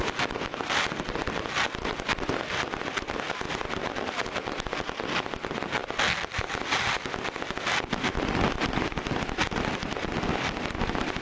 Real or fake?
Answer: real